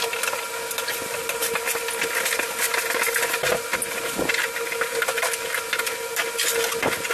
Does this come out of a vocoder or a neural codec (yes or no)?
no